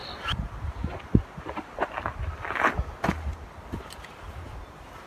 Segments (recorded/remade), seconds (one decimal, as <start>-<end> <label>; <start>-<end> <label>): 0.0-0.7 remade; 0.7-5.1 recorded